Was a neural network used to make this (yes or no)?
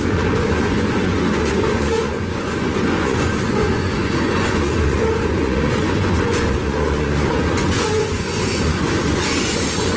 yes